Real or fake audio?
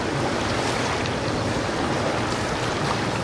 real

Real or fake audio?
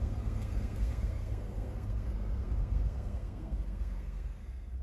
fake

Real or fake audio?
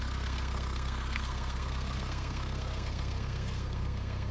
fake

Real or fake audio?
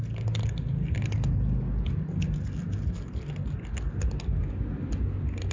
real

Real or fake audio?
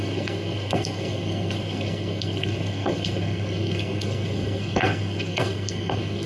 fake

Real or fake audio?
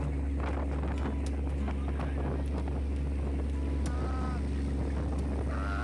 real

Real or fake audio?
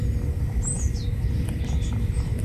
real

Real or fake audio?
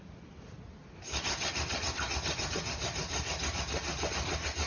real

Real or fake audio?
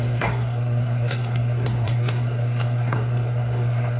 fake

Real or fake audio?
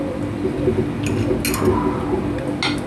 real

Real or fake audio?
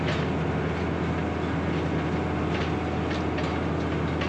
real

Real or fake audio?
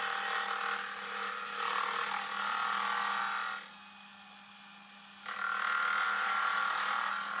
real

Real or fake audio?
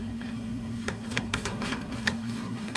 fake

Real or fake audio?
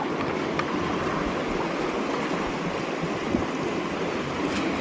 real